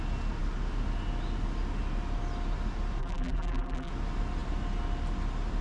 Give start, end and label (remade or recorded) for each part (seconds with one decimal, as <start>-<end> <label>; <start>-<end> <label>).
0.0-3.0 recorded; 3.0-3.9 remade; 3.9-5.6 recorded